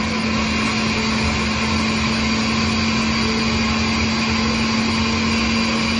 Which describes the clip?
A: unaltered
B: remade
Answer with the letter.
A